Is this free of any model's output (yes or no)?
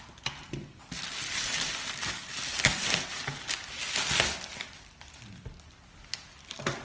yes